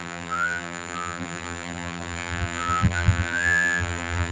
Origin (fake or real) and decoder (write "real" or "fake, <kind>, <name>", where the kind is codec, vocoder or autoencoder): fake, vocoder, BigVGAN v2